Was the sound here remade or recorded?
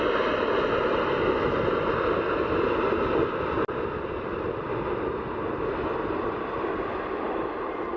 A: recorded